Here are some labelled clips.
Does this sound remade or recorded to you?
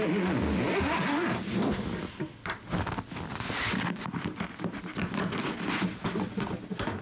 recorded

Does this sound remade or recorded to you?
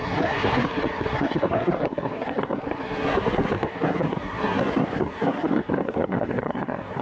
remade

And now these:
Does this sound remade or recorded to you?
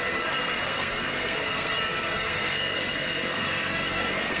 remade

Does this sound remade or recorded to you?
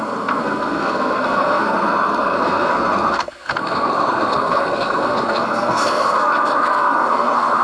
remade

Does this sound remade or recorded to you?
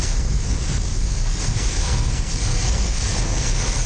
remade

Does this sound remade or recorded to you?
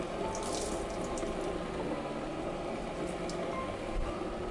recorded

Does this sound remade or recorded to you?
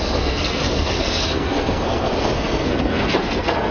remade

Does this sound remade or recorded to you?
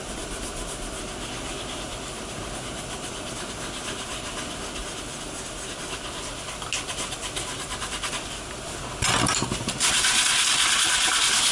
recorded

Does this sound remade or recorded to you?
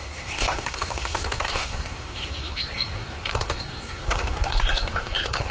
remade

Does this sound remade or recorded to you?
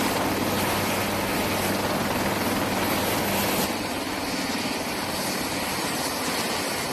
recorded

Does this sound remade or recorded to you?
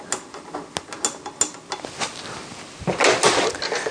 recorded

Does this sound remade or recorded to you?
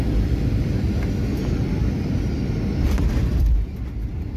recorded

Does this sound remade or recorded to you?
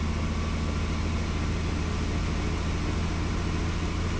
recorded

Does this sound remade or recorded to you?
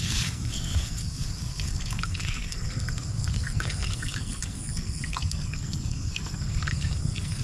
remade